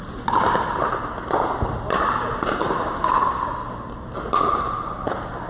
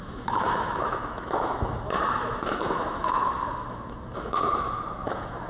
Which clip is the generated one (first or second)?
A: second